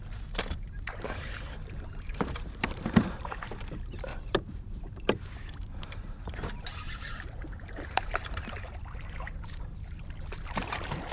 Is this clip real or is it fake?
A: fake